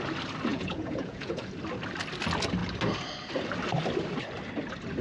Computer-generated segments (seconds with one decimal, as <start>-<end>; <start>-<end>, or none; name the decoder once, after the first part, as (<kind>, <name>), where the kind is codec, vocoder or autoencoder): 0.5-1.5 (vocoder, Vocos)